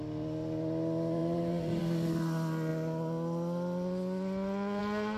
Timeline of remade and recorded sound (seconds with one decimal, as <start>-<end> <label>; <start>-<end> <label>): 0.0-1.2 recorded; 1.2-1.8 remade; 1.8-5.2 recorded